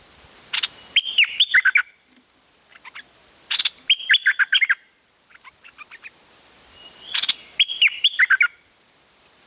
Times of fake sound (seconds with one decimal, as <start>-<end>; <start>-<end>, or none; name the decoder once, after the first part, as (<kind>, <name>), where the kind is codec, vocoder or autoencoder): none